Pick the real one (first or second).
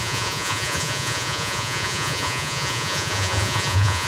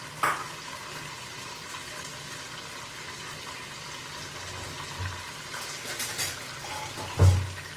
second